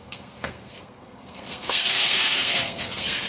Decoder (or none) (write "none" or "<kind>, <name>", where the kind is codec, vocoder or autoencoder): codec, SNAC